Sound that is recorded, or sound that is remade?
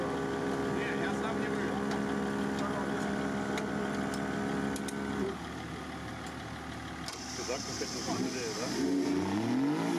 recorded